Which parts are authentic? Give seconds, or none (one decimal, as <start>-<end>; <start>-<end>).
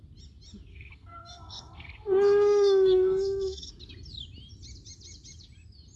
0.0-0.7; 3.7-6.0